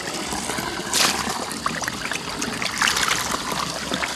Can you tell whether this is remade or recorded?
recorded